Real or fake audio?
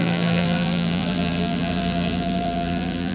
fake